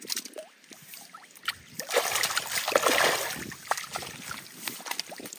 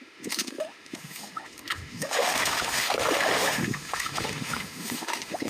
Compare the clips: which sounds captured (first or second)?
first